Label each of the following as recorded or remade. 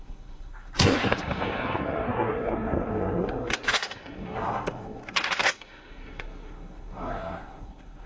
remade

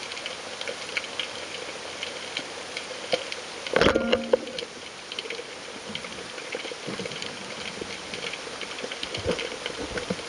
recorded